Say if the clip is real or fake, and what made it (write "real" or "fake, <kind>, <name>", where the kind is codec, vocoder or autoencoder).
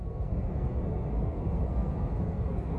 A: fake, codec, SNAC